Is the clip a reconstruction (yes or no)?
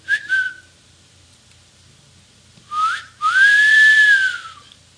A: no